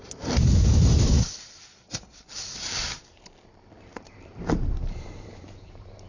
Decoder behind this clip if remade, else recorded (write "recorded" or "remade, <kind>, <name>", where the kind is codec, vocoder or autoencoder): remade, vocoder, BigVGAN v2